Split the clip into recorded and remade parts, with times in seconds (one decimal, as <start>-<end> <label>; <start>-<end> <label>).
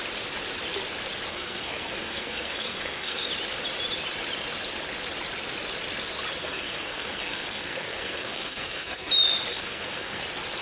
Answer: 0.0-1.3 recorded; 1.3-3.3 remade; 3.3-6.4 recorded; 6.4-9.1 remade; 9.1-9.5 recorded; 9.5-10.2 remade; 10.2-10.6 recorded